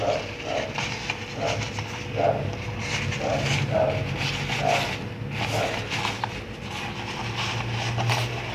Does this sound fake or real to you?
real